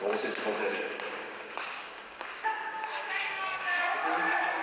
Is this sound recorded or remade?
remade